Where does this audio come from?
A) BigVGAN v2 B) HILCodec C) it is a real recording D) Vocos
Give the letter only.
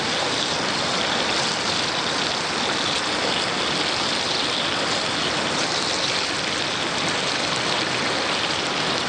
C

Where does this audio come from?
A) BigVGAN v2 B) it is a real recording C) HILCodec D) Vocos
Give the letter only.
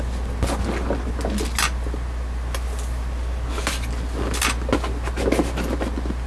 B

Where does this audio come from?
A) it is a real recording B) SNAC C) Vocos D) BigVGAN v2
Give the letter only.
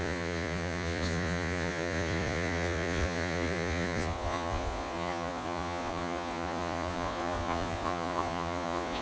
C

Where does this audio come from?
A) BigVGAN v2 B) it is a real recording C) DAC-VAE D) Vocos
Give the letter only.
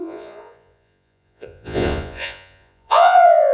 D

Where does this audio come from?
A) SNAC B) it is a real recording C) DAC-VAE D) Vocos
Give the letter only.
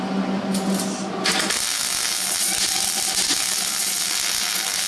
B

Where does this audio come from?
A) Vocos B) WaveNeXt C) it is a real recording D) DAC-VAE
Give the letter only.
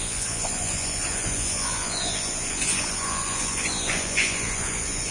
A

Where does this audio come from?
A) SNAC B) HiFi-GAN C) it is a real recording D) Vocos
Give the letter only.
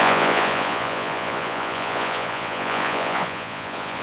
D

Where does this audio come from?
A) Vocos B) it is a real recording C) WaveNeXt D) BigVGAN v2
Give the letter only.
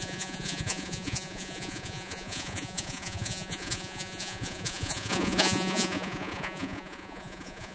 A